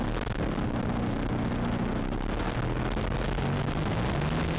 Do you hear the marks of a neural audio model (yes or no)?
no